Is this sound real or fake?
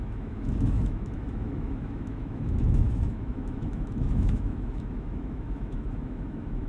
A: fake